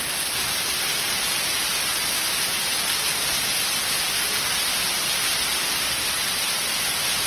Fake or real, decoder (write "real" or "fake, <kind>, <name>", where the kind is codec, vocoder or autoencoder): real